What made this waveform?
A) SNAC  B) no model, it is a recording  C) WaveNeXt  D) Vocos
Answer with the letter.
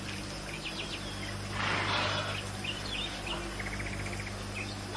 B